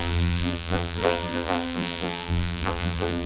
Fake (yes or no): yes